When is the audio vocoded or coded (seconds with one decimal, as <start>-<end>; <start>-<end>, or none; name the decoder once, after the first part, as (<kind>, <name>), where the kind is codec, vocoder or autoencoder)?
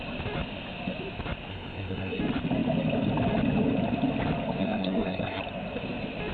1.5-2.2 (codec, SNAC); 4.6-5.4